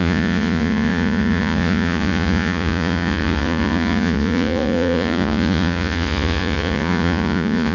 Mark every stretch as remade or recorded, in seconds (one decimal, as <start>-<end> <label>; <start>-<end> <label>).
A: 0.0-7.7 remade